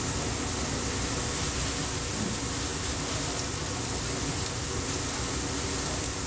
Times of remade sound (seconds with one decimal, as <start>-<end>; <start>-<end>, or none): none